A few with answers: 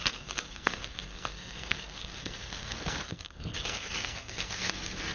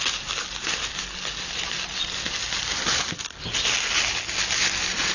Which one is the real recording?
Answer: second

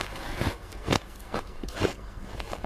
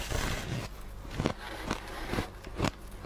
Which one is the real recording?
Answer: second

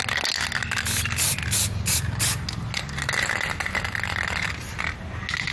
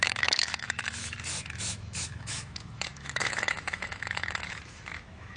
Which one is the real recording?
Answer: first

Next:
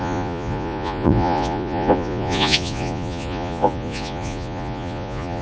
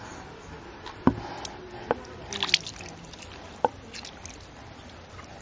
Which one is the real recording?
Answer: second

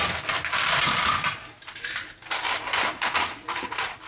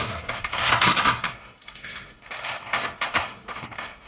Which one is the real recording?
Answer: first